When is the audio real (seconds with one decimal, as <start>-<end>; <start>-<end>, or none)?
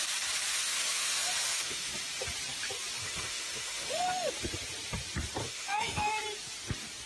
0.0-0.5; 1.9-3.0; 4.3-5.4; 6.1-7.1